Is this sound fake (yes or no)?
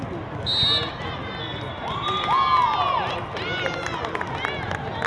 no